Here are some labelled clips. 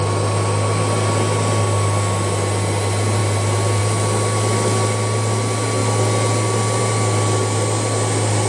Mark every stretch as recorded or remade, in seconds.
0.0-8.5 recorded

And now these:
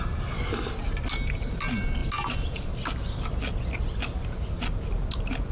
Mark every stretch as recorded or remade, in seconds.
0.0-5.5 recorded

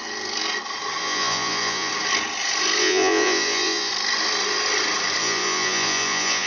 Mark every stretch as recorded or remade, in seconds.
0.0-1.0 recorded; 1.0-1.9 remade; 1.9-2.8 recorded; 2.8-3.9 remade; 3.9-5.2 recorded; 5.2-6.5 remade

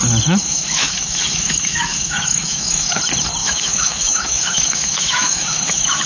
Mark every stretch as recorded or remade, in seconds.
0.0-0.4 recorded; 0.4-3.0 remade; 3.0-3.4 recorded; 3.4-6.1 remade